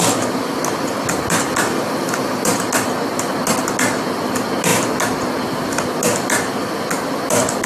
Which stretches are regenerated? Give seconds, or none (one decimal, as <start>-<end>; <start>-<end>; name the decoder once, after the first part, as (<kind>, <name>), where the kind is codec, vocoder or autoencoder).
none